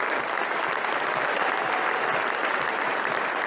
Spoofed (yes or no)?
no